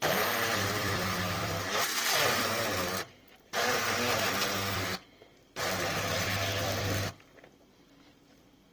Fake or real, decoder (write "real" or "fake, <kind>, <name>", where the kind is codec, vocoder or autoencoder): fake, vocoder, BigVGAN v2